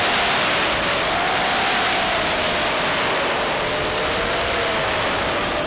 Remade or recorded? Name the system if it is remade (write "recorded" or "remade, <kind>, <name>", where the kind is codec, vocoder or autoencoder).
recorded